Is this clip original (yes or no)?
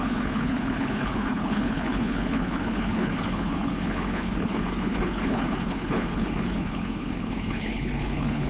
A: no